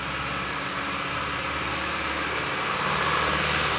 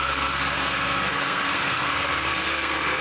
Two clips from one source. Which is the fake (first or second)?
second